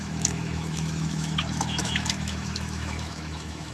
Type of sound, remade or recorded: remade